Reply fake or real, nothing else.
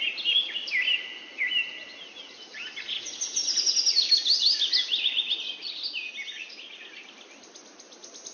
real